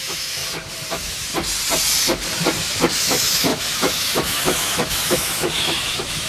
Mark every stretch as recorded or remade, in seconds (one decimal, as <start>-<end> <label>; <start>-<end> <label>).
0.0-0.4 remade; 0.4-0.9 recorded; 0.9-1.3 remade; 1.3-3.0 recorded; 3.0-6.3 remade